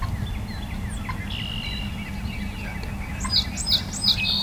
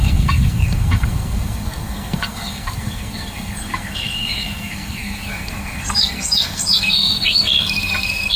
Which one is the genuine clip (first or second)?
first